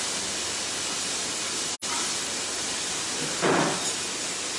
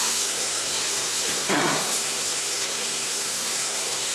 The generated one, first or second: second